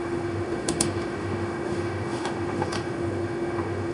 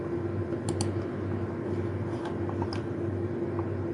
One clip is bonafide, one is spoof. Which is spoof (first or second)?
first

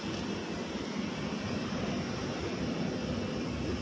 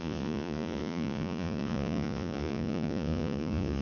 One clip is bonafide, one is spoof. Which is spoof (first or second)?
second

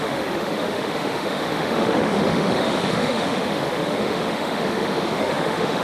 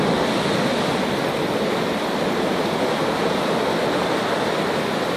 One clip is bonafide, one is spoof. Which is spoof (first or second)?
first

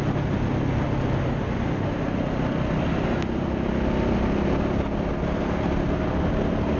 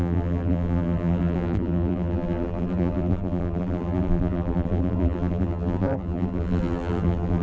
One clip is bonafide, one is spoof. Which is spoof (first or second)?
second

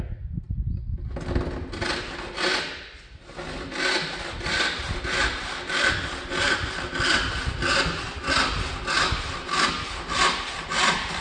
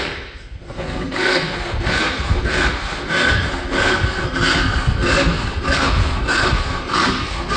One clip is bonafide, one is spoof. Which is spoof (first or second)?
second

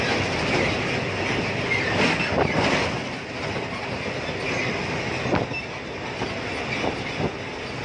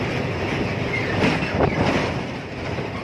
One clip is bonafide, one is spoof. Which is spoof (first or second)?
second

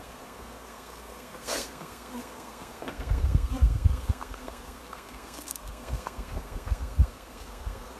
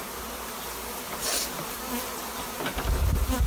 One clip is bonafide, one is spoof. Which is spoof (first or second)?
first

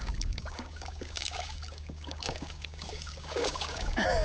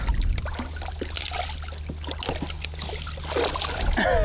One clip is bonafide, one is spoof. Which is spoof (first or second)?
first